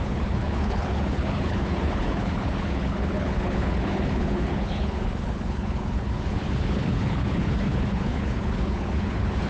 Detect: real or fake fake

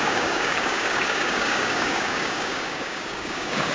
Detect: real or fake fake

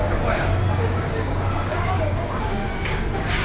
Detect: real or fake fake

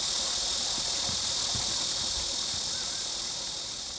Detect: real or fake real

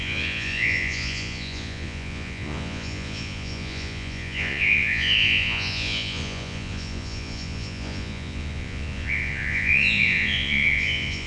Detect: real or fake fake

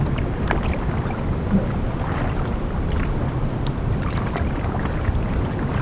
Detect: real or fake fake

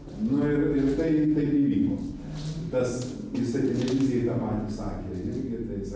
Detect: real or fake real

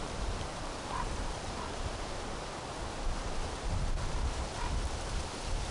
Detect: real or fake fake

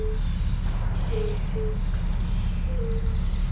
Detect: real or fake real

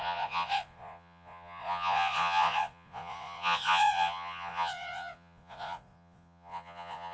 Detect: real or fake fake